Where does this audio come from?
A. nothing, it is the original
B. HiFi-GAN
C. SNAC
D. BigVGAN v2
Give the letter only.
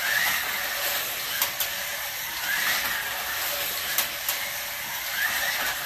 A